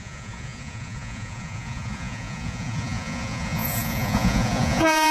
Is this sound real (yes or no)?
no